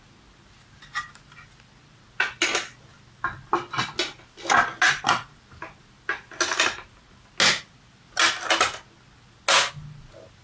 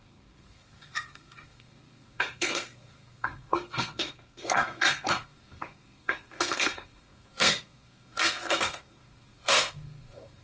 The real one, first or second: first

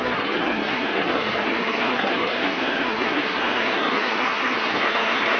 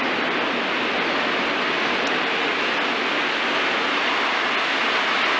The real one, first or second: second